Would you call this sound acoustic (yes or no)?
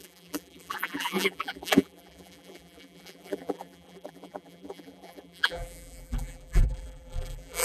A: no